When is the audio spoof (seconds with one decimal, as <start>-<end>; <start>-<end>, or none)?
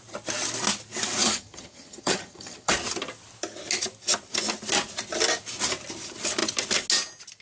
1.2-2.7